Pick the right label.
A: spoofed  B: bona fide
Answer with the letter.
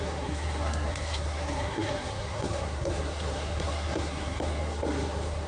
A